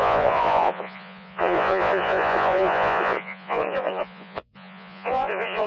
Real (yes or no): no